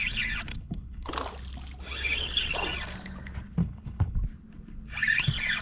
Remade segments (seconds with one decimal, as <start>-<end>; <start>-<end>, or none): 0.5-1.1; 3.6-4.2